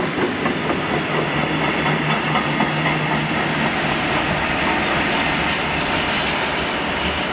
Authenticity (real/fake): real